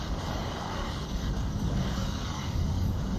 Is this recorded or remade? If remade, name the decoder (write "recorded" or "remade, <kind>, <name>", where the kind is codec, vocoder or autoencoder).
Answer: remade, codec, DAC